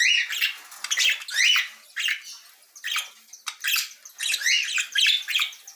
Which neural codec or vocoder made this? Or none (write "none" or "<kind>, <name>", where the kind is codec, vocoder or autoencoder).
none